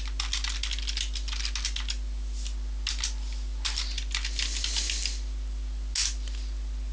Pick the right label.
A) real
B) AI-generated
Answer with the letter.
A